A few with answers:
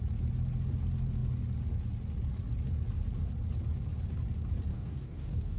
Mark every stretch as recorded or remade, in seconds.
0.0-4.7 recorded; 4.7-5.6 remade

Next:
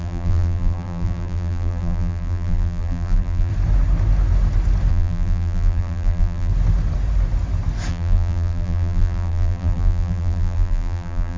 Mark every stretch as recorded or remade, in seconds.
0.0-3.5 remade; 3.5-4.9 recorded; 4.9-6.5 remade; 6.5-7.9 recorded; 7.9-11.4 remade

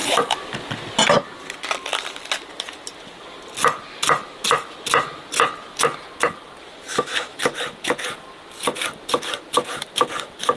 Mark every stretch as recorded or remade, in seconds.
0.0-6.9 recorded; 6.9-7.4 remade; 7.4-10.6 recorded

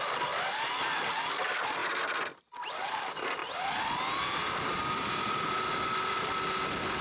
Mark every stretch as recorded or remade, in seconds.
0.0-7.0 recorded

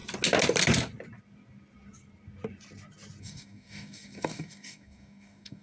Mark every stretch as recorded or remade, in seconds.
0.0-3.2 recorded; 3.2-5.6 remade

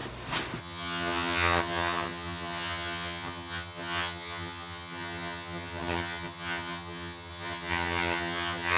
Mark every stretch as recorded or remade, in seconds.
0.0-0.6 recorded; 0.6-8.8 remade

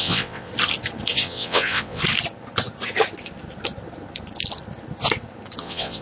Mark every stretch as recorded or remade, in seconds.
0.0-0.5 remade; 0.5-1.1 recorded; 1.1-2.0 remade; 2.0-5.6 recorded; 5.6-6.0 remade